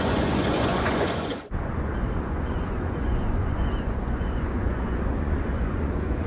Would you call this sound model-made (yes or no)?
yes